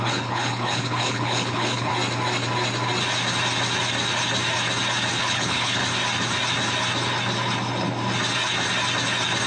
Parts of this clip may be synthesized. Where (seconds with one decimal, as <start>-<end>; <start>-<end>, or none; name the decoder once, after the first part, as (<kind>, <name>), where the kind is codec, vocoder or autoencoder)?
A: 0.0-1.9 (codec, HILCodec); 5.2-5.8